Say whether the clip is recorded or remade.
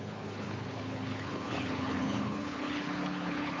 remade